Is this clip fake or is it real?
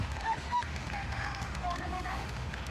fake